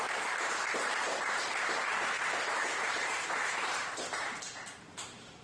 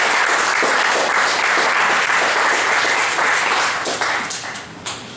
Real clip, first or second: second